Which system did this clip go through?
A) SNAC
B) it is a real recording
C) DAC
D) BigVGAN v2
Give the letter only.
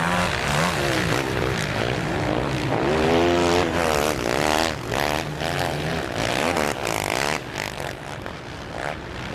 B